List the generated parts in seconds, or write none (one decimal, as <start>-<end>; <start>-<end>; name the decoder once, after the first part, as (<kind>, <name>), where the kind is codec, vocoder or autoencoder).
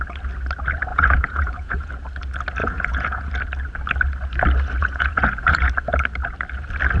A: 0.9-1.9 (vocoder, Vocos); 2.6-3.3; 4.8-5.6